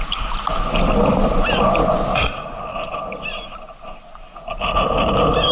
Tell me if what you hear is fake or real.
real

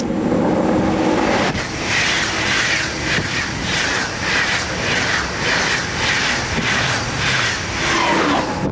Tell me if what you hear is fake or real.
real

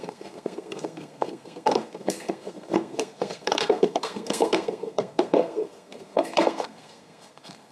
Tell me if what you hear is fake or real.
fake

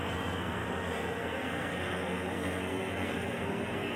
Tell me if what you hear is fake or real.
fake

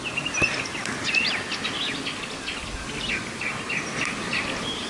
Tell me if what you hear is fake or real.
real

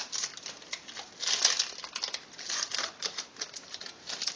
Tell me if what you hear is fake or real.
real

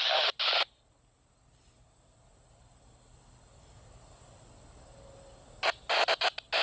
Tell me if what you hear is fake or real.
real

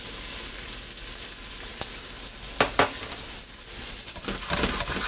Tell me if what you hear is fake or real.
real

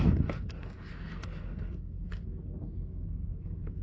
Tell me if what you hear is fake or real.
fake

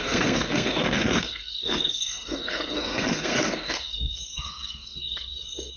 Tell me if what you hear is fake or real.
fake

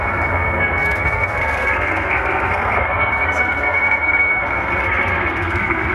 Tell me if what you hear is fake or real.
fake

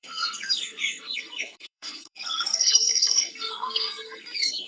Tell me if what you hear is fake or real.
fake